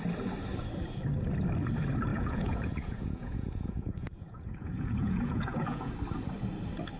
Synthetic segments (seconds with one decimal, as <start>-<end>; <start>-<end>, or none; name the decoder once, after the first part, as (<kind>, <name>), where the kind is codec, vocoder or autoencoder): 2.1-5.9 (vocoder, Vocos)